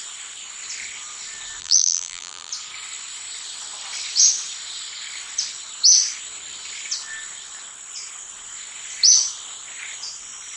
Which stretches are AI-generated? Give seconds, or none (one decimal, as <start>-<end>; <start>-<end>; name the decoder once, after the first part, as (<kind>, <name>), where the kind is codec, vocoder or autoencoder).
1.6-2.5 (vocoder, BigVGAN v2)